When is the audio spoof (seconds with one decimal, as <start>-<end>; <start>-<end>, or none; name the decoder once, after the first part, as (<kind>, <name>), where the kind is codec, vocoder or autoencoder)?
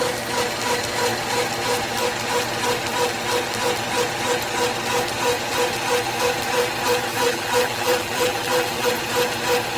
7.1-8.9 (vocoder, BigVGAN v2)